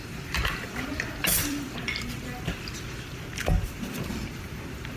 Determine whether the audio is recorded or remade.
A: remade